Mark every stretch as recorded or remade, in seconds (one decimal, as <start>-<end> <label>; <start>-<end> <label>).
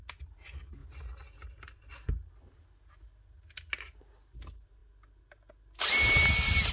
0.0-6.7 recorded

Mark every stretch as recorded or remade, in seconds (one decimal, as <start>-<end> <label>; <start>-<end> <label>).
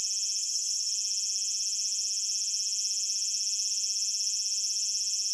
0.0-0.4 recorded; 0.4-0.9 remade; 0.9-5.3 recorded